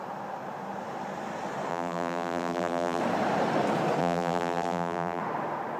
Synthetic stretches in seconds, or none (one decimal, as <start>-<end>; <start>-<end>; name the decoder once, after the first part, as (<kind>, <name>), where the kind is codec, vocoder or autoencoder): 1.7-3.0 (vocoder, BigVGAN v2); 4.0-5.2

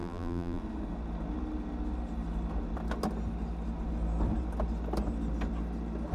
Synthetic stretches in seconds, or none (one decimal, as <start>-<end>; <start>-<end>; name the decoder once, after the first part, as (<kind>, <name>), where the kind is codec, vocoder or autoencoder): 0.0-0.6 (vocoder, BigVGAN v2)